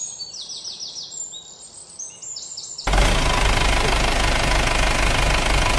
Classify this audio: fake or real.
real